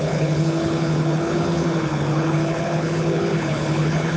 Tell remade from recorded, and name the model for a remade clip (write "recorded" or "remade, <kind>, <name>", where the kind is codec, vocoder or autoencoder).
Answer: remade, codec, HILCodec